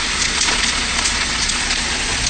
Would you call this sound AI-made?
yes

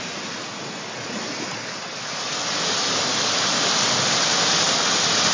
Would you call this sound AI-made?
no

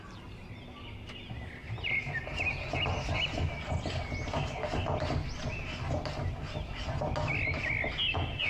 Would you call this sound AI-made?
no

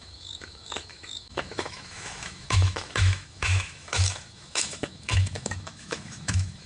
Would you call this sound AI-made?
yes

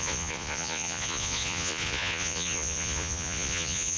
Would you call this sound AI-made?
yes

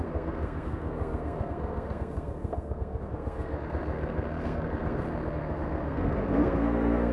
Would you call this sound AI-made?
yes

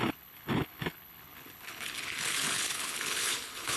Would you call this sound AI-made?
yes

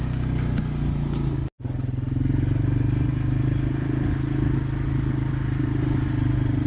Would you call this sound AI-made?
no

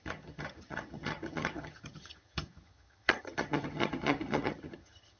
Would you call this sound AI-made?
yes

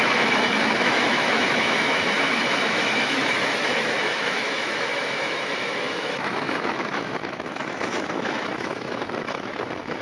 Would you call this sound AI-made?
yes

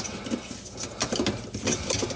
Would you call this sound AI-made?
no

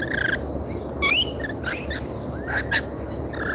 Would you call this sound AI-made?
no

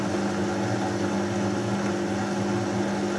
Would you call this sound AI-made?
no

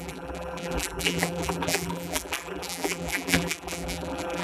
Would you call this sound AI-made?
yes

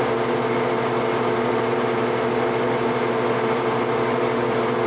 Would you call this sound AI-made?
no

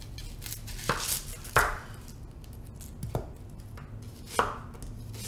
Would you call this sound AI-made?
no